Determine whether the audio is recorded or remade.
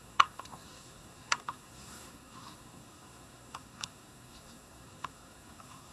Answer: remade